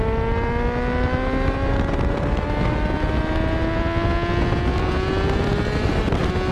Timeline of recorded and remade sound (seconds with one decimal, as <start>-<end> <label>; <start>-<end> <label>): 0.0-6.5 recorded